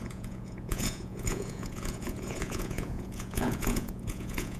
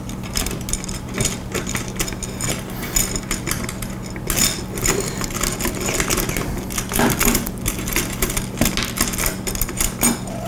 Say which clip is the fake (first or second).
first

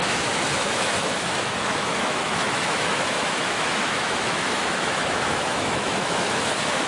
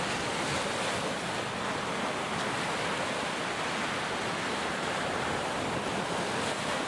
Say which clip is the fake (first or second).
first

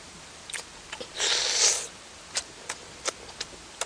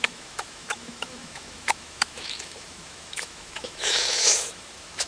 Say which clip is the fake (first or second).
second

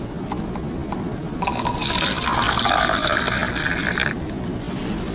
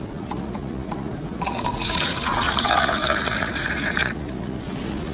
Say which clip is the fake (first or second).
second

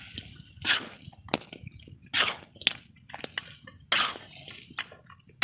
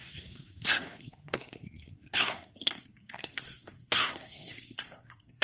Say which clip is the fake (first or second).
second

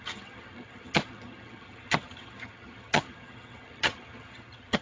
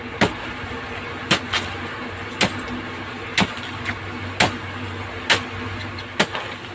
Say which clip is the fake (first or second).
first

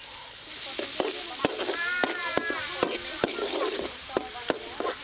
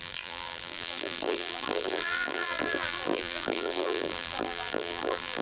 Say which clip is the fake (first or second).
second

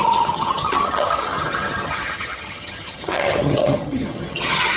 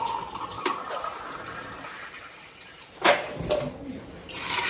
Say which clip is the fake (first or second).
first